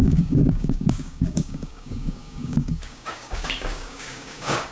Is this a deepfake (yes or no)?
yes